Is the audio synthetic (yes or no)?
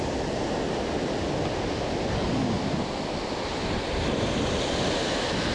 no